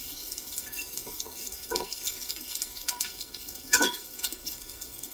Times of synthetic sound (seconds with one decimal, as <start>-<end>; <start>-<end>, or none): 0.0-5.1